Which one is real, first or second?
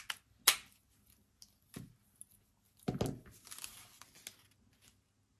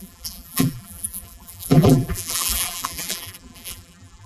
first